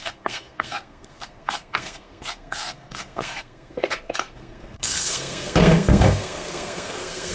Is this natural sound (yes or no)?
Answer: no